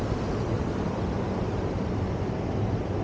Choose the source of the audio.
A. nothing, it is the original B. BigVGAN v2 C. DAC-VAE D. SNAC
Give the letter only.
A